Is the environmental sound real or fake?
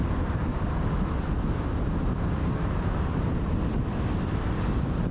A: real